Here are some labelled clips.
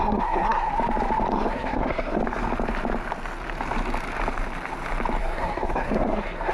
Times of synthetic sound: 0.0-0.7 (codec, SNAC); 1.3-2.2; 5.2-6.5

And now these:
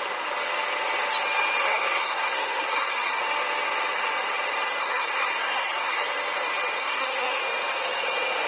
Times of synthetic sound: 1.6-3.2 (codec, SNAC); 4.8-6.0; 6.8-7.4

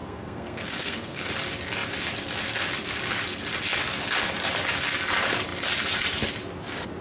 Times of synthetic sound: 0.0-1.3 (codec, SNAC)

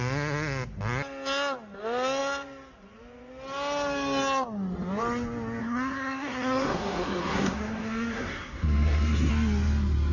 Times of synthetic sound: 5.6-9.3 (codec, SNAC)

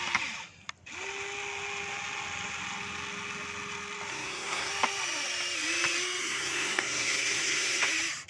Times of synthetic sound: 4.1-4.7 (codec, SNAC); 6.2-7.9